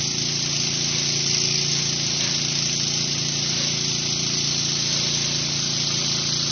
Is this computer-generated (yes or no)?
no